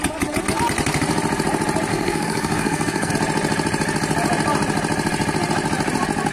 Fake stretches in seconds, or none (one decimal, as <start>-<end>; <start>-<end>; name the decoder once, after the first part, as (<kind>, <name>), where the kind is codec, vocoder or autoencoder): 1.9-3.1 (codec, SNAC)